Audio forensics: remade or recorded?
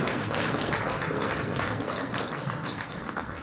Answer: remade